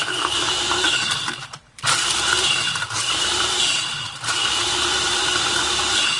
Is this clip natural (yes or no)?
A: no